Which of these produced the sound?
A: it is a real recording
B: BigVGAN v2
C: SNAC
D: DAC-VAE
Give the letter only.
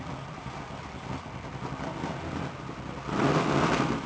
A